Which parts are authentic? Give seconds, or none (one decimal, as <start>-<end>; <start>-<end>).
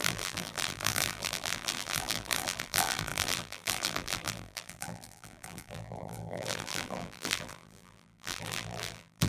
none